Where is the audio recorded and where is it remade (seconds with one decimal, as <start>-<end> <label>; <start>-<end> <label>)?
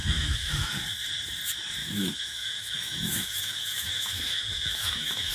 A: 0.0-0.7 remade; 0.7-1.8 recorded; 1.8-5.3 remade